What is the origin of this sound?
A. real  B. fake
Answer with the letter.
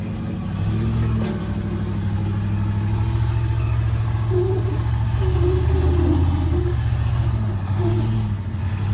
A